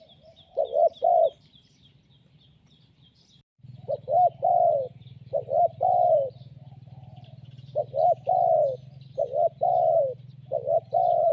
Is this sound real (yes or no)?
no